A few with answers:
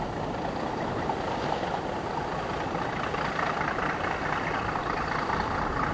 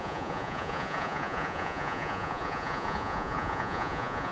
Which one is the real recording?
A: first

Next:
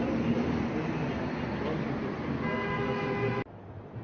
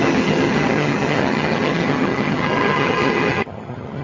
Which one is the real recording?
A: first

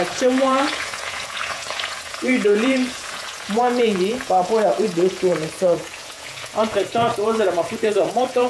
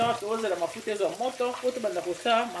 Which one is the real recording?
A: second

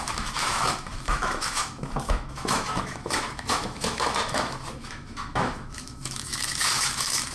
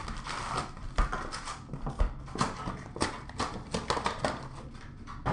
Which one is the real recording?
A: second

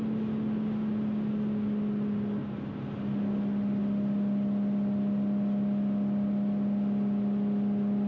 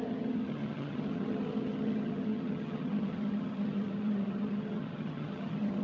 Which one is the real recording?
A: first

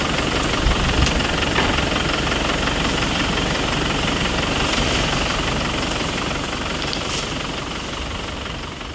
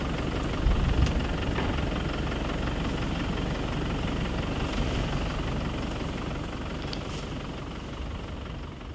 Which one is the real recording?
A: second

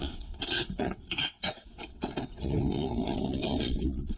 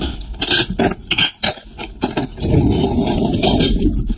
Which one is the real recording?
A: second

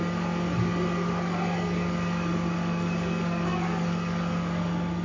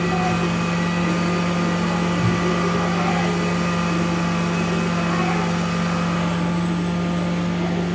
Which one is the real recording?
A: second